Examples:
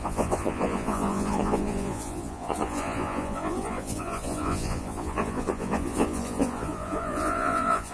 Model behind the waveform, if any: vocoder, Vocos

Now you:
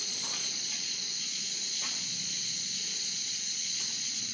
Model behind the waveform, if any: vocoder, Vocos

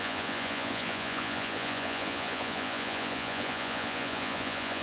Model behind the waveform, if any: vocoder, Vocos